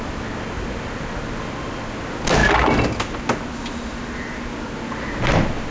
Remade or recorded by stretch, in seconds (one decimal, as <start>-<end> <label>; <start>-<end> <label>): 0.0-5.7 recorded